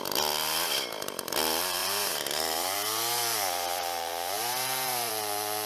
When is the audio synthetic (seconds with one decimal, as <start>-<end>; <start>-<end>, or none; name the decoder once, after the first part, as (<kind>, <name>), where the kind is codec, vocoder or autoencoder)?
1.8-5.1 (vocoder, BigVGAN v2)